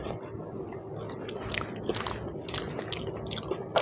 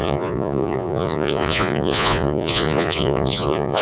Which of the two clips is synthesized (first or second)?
second